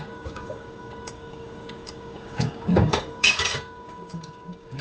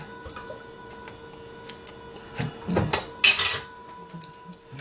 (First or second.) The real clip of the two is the second